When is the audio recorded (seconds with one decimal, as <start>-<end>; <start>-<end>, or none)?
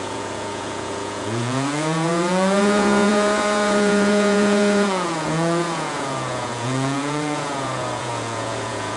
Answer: none